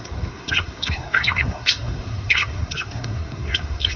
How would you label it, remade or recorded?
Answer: remade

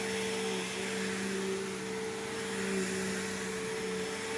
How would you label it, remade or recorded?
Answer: recorded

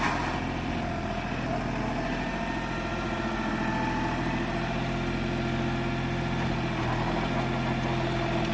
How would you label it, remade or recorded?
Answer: recorded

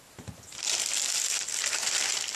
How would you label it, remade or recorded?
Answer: remade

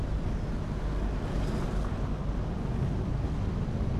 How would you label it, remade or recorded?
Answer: recorded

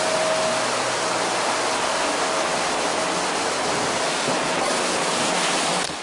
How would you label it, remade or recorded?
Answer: recorded